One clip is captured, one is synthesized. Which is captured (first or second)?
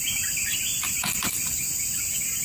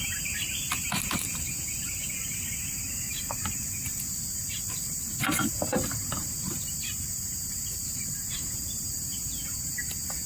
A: first